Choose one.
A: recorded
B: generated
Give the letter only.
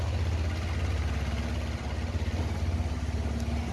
A